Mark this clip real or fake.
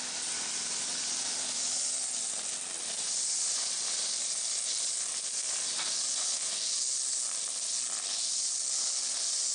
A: real